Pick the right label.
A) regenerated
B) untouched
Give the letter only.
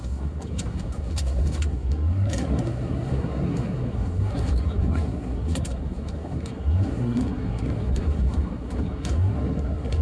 A